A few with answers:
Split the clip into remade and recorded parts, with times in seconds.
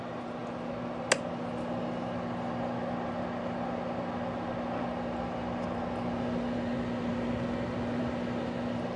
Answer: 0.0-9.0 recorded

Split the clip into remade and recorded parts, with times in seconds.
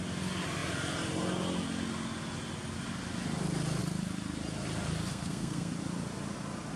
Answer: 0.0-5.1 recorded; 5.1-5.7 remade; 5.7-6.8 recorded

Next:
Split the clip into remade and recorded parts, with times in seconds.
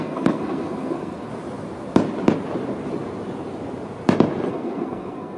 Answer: 0.0-1.3 remade; 1.3-4.5 recorded; 4.5-5.4 remade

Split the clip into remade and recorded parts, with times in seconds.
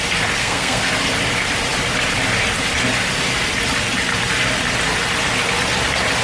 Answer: 0.0-0.4 recorded; 0.4-0.9 remade; 0.9-6.2 recorded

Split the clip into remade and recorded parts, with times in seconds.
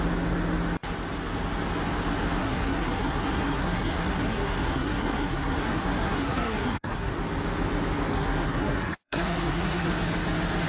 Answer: 0.0-2.4 recorded; 2.4-7.1 remade; 7.1-8.1 recorded; 8.1-9.9 remade; 9.9-10.7 recorded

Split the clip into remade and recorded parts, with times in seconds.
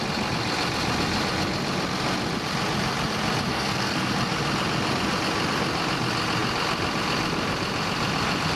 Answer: 0.0-3.5 recorded; 3.5-4.1 remade; 4.1-8.6 recorded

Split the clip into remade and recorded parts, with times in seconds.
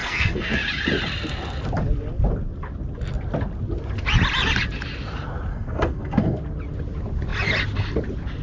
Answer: 0.0-0.6 remade; 0.6-5.5 recorded; 5.5-6.4 remade; 6.4-8.4 recorded